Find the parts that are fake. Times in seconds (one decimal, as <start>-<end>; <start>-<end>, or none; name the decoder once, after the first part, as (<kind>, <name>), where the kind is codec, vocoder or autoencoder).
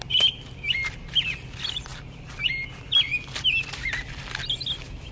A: none